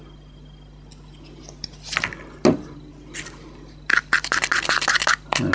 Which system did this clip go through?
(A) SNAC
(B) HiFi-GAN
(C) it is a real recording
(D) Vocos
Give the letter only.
C